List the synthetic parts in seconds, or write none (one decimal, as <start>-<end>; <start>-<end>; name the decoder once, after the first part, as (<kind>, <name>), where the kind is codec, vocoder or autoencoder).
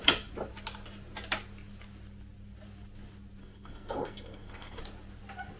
3.4-4.8 (codec, SNAC)